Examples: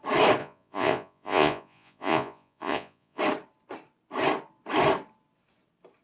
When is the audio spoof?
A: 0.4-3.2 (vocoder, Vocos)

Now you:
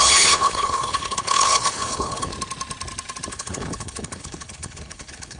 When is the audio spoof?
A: 0.0-2.3 (codec, HILCodec); 3.3-5.4

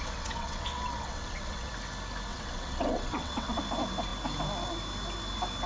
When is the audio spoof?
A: 0.0-1.7 (vocoder, WaveNeXt); 2.3-3.6

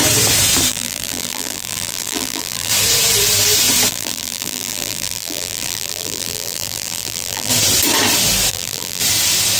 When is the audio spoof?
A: 0.7-2.7 (vocoder, BigVGAN v2); 3.9-7.5; 8.5-9.0

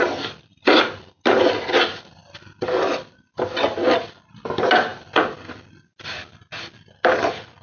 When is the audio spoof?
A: none